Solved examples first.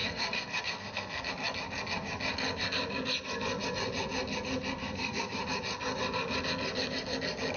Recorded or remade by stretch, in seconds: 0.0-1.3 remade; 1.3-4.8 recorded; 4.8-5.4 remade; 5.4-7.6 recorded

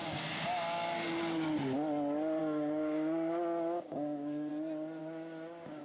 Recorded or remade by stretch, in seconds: 0.0-0.5 remade; 0.5-2.4 recorded; 2.4-4.5 remade; 4.5-5.0 recorded; 5.0-5.8 remade

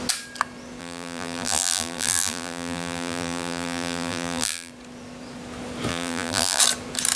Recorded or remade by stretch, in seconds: 0.0-0.8 recorded; 0.8-4.7 remade; 4.7-5.9 recorded; 5.9-6.6 remade; 6.6-7.2 recorded

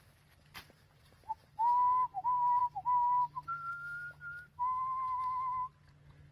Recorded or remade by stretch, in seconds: 0.0-3.7 recorded; 3.7-4.8 remade; 4.8-6.3 recorded

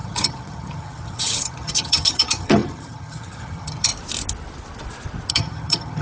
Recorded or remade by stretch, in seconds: 0.0-3.9 remade; 3.9-5.3 recorded; 5.3-6.0 remade

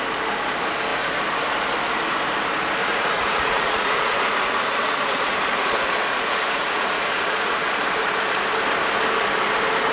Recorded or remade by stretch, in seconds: 0.0-2.8 recorded; 2.8-8.0 remade; 8.0-9.9 recorded

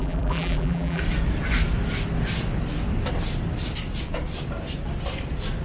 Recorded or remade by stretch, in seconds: 0.0-1.0 remade; 1.0-5.6 recorded

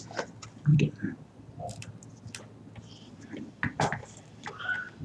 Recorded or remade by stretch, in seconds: 0.0-0.7 recorded; 0.7-1.9 remade; 1.9-4.0 recorded; 4.0-4.6 remade; 4.6-5.0 recorded